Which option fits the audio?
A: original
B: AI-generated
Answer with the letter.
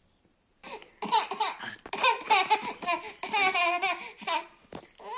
A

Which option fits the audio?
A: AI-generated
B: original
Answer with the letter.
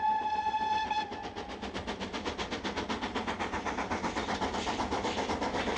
B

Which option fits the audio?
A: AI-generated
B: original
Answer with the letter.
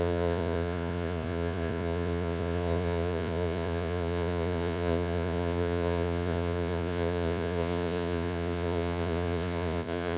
A